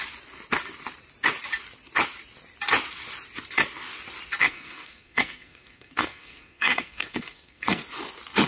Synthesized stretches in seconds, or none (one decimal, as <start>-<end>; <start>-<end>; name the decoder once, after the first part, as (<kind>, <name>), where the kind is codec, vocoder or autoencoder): 4.4-7.8 (codec, SNAC)